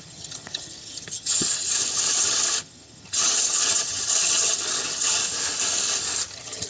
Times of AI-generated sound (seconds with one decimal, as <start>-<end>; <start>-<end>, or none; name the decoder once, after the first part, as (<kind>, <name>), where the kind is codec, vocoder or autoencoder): 0.0-5.2 (vocoder, HiFi-GAN); 6.3-6.7